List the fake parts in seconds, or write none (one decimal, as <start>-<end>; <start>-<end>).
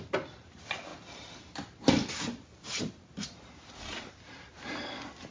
none